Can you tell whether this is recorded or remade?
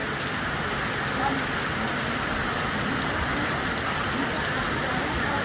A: recorded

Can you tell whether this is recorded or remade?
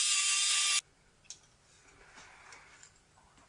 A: recorded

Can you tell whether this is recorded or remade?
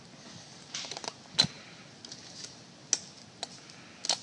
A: recorded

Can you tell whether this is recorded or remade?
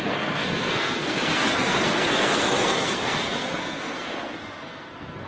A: remade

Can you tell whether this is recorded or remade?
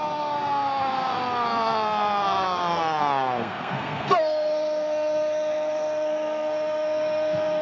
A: remade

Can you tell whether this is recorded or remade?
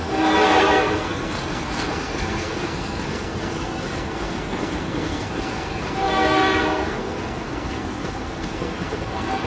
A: remade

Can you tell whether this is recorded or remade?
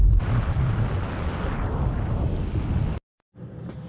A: recorded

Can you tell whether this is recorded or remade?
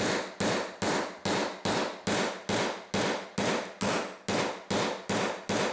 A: recorded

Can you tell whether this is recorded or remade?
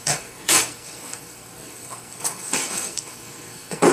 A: remade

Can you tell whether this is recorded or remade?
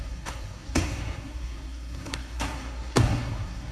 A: remade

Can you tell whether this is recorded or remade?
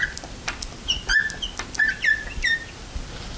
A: recorded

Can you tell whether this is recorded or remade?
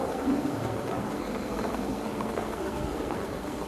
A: remade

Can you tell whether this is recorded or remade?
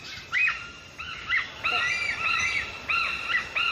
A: recorded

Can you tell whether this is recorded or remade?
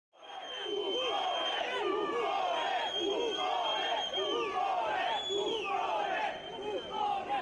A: recorded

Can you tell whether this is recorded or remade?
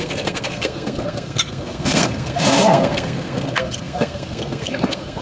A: remade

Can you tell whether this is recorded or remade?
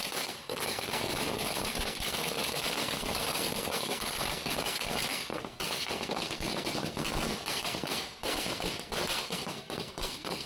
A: remade